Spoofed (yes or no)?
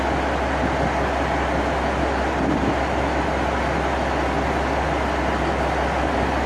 no